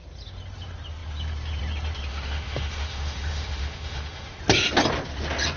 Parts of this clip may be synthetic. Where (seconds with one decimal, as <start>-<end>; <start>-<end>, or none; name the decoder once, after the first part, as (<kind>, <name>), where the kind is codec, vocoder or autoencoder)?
2.1-4.4 (autoencoder, DAC-VAE)